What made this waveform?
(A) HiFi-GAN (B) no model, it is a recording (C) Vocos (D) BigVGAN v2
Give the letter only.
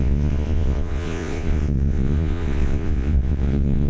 C